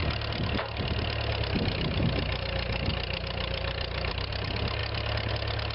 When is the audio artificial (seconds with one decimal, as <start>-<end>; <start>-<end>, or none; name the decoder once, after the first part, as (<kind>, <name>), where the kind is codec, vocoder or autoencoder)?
0.0-2.0 (vocoder, BigVGAN v2); 2.9-4.3